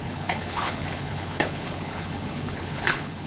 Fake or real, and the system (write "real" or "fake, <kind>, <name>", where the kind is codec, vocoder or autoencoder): fake, codec, HILCodec